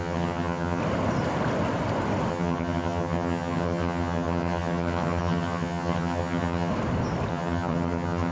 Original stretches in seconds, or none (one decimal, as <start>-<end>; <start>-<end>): 0.8-2.3; 6.7-7.3